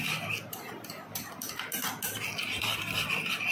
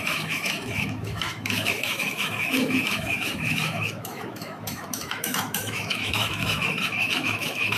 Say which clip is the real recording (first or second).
first